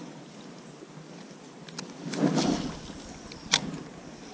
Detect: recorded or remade recorded